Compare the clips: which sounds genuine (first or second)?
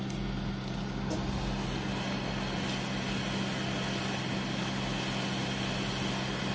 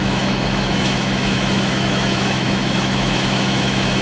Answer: first